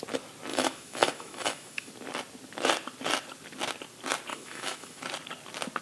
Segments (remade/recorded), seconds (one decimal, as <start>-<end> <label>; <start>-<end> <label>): 0.0-0.5 recorded; 0.5-1.9 remade; 1.9-4.3 recorded; 4.3-5.0 remade; 5.0-5.8 recorded